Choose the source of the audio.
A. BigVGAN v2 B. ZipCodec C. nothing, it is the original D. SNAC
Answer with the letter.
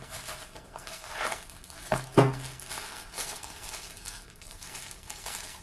D